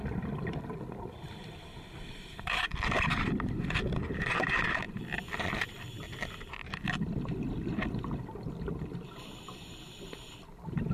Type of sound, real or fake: fake